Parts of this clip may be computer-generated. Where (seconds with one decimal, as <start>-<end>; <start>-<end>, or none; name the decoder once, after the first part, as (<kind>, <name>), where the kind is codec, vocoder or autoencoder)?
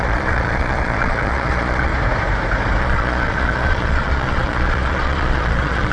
0.0-1.9 (vocoder, Vocos); 2.8-5.9